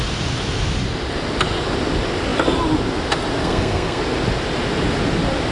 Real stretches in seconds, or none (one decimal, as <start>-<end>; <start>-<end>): 0.0-3.4; 4.0-5.5